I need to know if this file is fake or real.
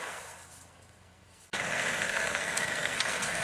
fake